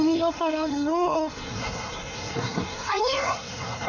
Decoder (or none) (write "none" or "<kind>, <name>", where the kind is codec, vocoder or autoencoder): codec, SNAC